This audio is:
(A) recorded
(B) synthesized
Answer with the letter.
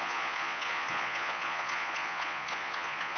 B